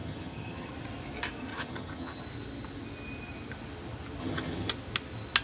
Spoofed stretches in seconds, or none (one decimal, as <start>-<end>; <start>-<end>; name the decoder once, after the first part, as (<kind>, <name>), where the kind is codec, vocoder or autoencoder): 0.0-0.7 (vocoder, HiFi-GAN); 1.5-2.2; 4.2-4.7